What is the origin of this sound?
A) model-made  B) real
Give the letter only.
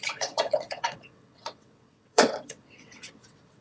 A